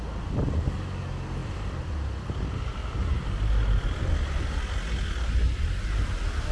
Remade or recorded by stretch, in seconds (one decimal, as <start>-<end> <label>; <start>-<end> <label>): 0.0-1.4 recorded; 1.4-2.0 remade; 2.0-2.8 recorded; 2.8-4.0 remade; 4.0-6.5 recorded